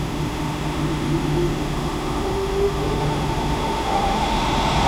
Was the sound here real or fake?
fake